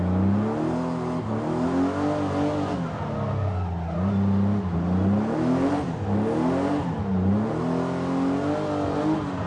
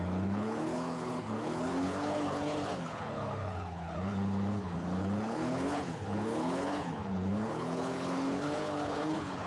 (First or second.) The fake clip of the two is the second